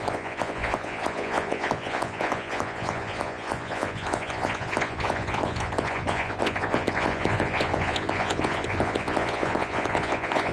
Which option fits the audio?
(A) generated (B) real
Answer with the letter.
A